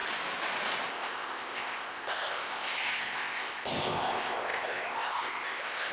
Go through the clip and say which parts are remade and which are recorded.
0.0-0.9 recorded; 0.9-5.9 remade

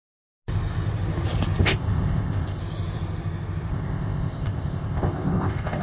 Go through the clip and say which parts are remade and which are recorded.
0.0-1.6 recorded; 1.6-2.6 remade; 2.6-3.7 recorded; 3.7-5.8 remade